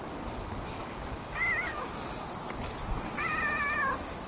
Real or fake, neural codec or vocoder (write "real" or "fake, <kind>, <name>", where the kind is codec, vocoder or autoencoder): real